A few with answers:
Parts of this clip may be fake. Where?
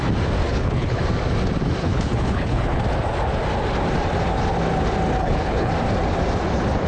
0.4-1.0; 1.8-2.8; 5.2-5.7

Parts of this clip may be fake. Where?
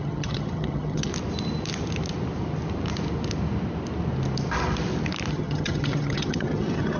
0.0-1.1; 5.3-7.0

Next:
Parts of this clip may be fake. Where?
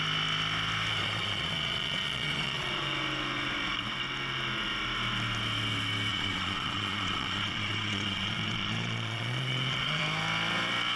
1.0-2.7; 6.1-10.0